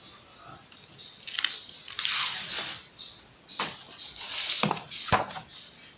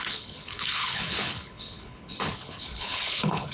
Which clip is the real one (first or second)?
first